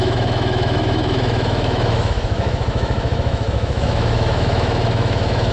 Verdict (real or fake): fake